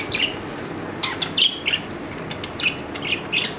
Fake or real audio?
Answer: real